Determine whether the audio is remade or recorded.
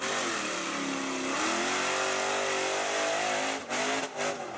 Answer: recorded